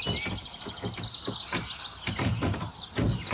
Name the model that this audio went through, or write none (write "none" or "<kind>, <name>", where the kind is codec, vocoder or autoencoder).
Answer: none